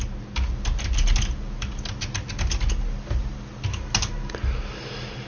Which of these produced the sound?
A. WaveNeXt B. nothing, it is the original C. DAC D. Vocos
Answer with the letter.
B